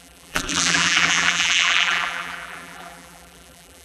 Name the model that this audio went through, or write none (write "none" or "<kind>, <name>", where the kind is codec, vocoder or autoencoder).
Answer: vocoder, BigVGAN v2